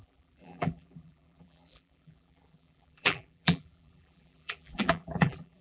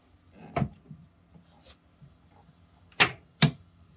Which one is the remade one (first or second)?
first